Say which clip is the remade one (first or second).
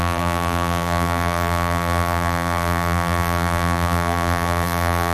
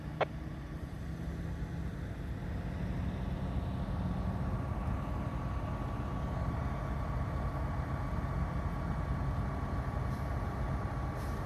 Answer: first